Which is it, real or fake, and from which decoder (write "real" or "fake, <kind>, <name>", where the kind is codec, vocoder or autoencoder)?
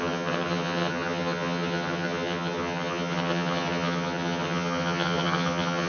fake, vocoder, HiFi-GAN